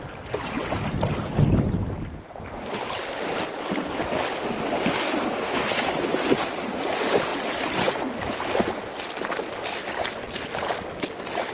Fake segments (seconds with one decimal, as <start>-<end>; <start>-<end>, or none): none